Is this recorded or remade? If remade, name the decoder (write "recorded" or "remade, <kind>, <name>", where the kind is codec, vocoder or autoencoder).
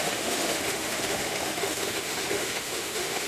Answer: remade, autoencoder, DAC-VAE